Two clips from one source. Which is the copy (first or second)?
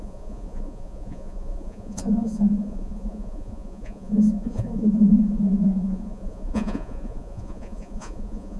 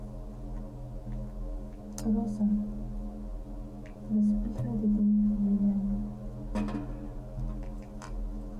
first